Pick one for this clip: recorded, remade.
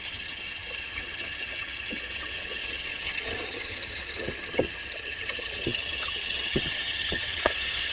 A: remade